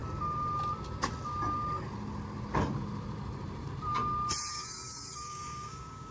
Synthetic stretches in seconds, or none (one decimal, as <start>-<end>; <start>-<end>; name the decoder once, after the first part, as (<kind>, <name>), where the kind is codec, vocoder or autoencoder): 4.5-6.1 (codec, DAC)